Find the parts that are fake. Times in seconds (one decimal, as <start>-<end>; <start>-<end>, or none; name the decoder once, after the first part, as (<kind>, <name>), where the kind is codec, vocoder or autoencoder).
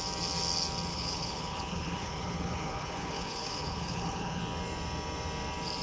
0.9-4.4 (codec, HILCodec)